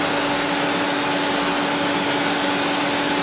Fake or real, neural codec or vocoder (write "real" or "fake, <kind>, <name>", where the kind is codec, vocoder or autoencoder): real